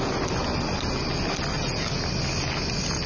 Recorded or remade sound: recorded